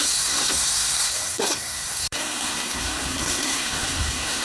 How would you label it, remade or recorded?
remade